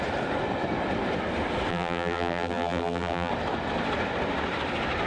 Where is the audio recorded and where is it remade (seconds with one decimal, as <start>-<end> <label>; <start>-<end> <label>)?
0.0-1.7 recorded; 1.7-3.3 remade; 3.3-5.1 recorded